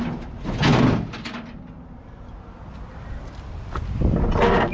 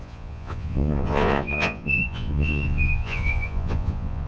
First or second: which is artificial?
second